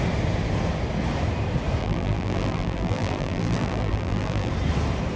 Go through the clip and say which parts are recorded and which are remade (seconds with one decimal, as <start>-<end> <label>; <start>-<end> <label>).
0.0-1.8 recorded; 1.8-4.5 remade; 4.5-5.2 recorded